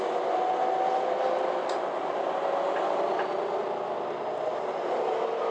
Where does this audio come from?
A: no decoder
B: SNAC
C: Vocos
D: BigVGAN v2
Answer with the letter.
A